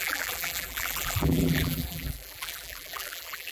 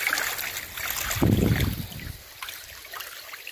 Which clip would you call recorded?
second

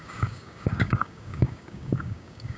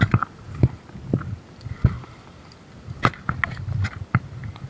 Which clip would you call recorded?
second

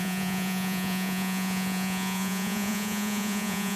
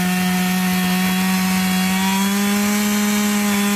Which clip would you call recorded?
second